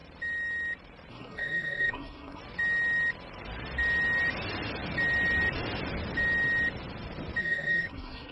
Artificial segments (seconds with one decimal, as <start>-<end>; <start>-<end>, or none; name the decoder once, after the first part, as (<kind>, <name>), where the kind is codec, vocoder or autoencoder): 1.1-2.4 (codec, SNAC); 7.4-8.3